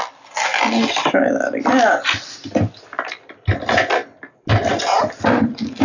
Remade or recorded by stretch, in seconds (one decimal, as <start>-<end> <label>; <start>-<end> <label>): 0.0-5.8 recorded